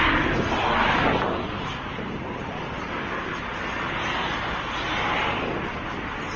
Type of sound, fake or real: real